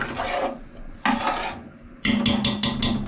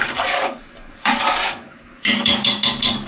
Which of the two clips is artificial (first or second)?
second